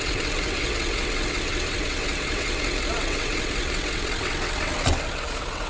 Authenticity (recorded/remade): remade